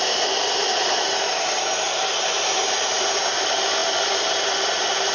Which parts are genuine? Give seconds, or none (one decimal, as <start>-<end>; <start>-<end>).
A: none